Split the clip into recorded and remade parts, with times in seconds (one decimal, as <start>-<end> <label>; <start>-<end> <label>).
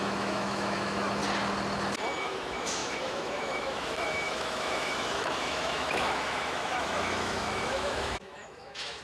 0.0-1.2 remade; 1.2-2.2 recorded; 2.2-9.0 remade